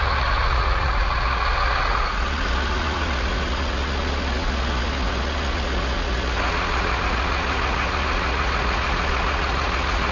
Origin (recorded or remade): remade